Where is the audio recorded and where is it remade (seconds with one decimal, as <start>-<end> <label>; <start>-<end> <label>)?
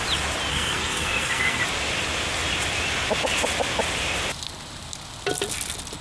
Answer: 0.0-0.5 recorded; 0.5-1.6 remade; 1.6-6.0 recorded